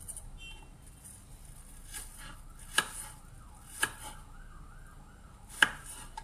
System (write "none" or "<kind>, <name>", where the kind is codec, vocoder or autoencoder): none